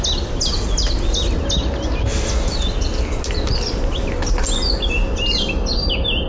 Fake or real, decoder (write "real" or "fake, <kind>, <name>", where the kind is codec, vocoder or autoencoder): real